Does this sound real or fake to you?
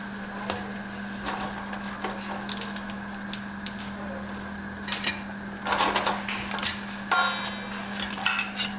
real